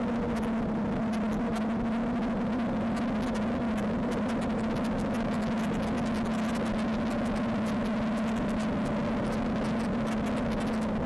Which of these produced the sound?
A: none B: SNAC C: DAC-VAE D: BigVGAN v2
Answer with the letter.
A